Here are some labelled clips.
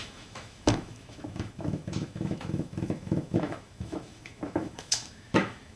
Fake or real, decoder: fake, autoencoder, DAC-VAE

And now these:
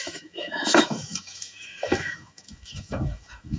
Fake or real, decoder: fake, autoencoder, DAC-VAE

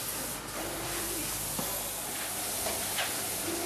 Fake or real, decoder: real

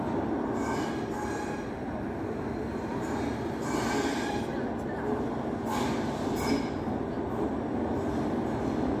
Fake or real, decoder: real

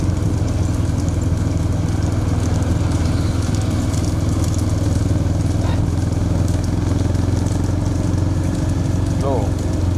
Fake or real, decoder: real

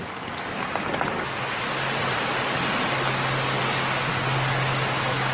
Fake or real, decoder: real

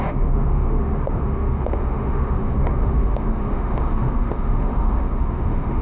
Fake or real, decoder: fake, autoencoder, DAC-VAE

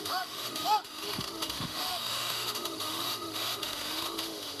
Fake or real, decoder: fake, autoencoder, DAC-VAE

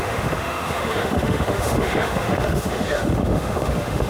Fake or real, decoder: fake, autoencoder, DAC-VAE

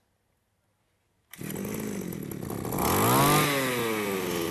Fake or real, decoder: real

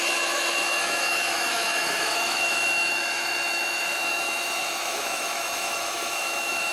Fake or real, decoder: fake, autoencoder, DAC-VAE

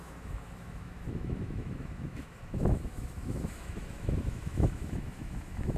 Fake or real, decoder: fake, autoencoder, DAC-VAE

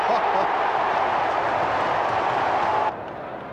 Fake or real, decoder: real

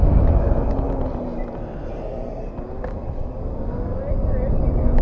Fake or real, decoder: real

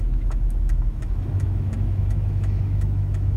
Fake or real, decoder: fake, autoencoder, DAC-VAE